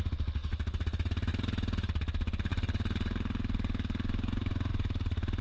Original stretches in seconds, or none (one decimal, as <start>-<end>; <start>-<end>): 0.0-5.4